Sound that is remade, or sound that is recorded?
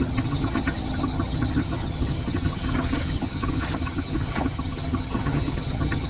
remade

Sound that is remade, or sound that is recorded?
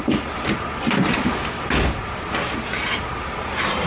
recorded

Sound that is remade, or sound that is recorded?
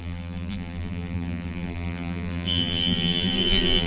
remade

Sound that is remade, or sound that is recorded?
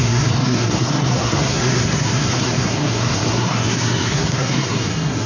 remade